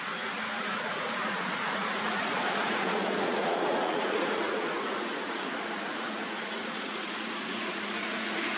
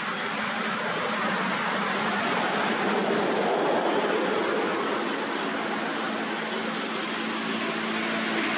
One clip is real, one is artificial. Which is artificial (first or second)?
first